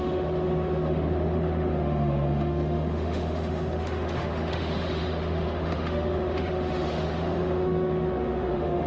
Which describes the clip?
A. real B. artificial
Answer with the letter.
B